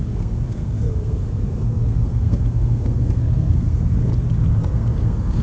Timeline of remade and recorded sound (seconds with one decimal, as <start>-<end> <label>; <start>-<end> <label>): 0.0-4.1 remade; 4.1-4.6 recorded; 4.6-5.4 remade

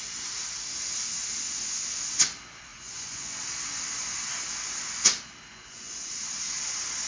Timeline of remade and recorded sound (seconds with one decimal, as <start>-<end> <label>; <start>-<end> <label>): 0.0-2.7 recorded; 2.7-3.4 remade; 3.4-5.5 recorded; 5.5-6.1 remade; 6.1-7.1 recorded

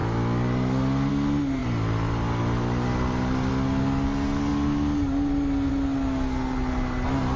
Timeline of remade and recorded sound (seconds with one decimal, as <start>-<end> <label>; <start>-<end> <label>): 0.0-7.4 recorded

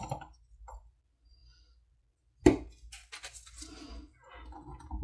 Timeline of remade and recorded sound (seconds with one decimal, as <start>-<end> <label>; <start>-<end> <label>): 0.0-5.0 recorded

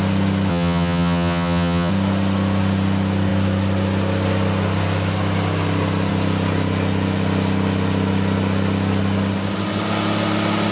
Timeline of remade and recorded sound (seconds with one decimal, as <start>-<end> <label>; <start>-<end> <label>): 0.0-0.5 recorded; 0.5-1.9 remade; 1.9-10.7 recorded